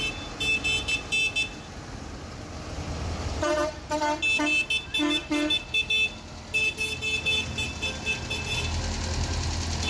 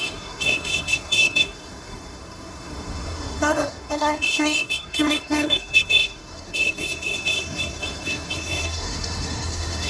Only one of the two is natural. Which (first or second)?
first